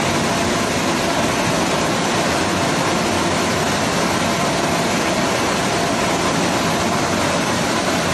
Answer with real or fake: real